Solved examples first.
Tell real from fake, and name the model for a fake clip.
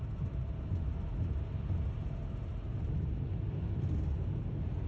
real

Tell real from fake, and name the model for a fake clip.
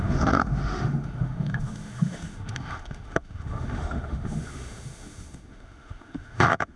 fake, autoencoder, DAC-VAE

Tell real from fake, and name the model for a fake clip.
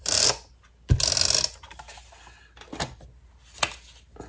real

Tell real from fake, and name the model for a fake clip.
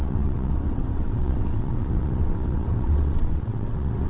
fake, vocoder, WaveNeXt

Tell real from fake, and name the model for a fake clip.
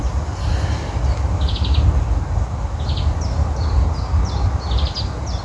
real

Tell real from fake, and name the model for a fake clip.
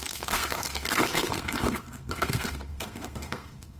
fake, codec, SNAC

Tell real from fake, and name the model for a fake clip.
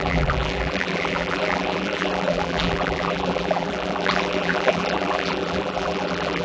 fake, vocoder, BigVGAN v2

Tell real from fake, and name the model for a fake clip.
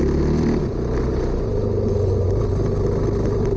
real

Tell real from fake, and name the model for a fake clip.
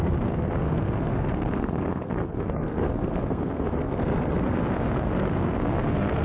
fake, codec, SNAC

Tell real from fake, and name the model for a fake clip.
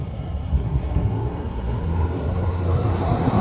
fake, codec, SNAC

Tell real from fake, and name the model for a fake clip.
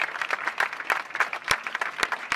fake, vocoder, BigVGAN v2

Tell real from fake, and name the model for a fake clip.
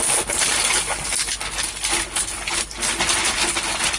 real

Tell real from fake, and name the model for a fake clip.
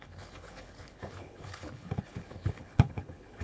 fake, codec, HILCodec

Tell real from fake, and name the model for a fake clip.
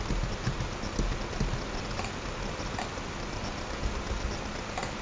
real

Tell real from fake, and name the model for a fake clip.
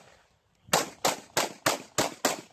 real